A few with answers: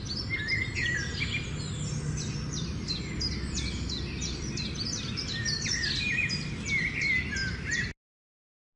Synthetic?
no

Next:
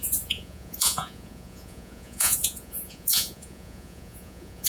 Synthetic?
yes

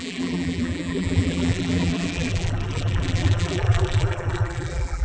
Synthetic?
yes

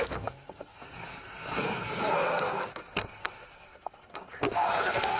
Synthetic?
yes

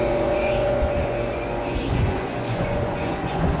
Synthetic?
yes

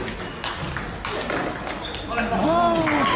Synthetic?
no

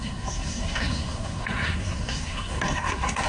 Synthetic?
yes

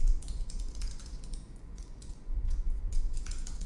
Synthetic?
yes